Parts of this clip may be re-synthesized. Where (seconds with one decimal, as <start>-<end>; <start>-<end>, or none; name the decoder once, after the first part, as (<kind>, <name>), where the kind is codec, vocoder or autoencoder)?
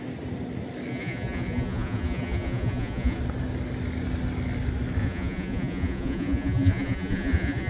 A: 0.9-3.2 (vocoder, Vocos); 5.0-7.7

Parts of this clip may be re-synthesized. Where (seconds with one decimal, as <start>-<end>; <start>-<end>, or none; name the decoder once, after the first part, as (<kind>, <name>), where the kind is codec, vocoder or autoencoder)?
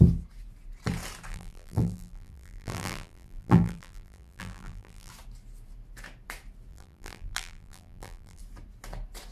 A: 1.3-5.1 (vocoder, BigVGAN v2); 6.7-8.4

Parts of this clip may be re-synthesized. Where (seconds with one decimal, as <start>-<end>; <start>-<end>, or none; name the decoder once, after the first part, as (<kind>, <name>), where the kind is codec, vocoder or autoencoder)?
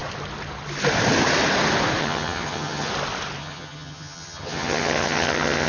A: 2.0-2.9 (vocoder, HiFi-GAN); 3.4-5.7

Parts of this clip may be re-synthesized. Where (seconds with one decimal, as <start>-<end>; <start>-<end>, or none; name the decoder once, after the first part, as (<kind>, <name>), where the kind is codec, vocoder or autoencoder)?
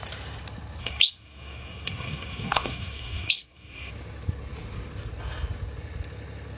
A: 0.8-3.9 (codec, SNAC)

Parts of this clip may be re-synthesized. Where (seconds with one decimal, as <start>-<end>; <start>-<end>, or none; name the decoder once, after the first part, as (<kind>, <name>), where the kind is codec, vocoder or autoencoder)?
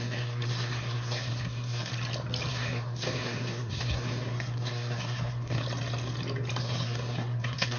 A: 0.0-1.9 (codec, SNAC); 2.5-5.6; 6.6-7.8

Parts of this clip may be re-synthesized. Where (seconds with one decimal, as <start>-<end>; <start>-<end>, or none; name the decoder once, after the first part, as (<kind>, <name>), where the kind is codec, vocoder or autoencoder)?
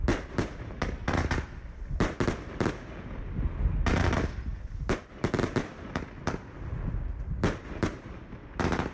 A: none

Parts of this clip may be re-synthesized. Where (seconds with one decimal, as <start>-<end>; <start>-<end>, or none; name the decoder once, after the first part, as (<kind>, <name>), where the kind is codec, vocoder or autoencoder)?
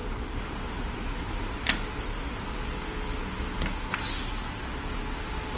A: none